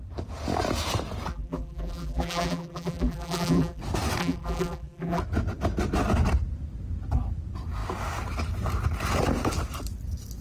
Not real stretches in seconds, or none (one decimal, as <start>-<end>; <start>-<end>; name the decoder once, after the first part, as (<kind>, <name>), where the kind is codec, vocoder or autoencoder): 1.3-3.8 (vocoder, BigVGAN v2); 4.2-5.2

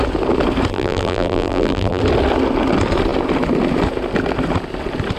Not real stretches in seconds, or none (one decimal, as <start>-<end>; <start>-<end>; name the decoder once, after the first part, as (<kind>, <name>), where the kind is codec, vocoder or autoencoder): 0.7-2.0 (vocoder, BigVGAN v2)